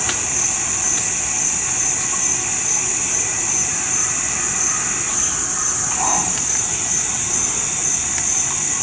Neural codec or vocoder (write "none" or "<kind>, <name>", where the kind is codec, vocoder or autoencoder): none